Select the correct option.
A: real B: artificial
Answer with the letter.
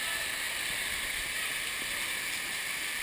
A